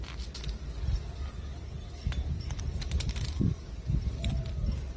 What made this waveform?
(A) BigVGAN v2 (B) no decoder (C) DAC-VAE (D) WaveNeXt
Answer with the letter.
B